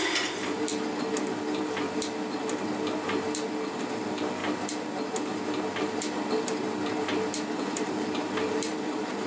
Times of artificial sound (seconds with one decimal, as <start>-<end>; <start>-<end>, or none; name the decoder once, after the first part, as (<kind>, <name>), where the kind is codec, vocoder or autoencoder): 0.0-0.7 (vocoder, BigVGAN v2); 3.8-4.4; 7.5-9.3